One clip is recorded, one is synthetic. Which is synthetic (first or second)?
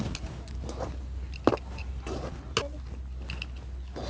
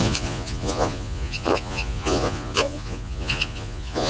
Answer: second